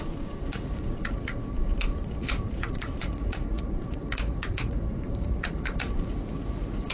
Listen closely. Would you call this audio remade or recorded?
remade